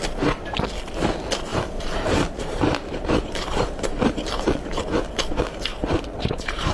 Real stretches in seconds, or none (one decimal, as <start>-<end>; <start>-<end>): 0.0-1.5; 4.3-5.7